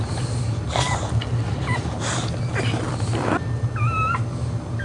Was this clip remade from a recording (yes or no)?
no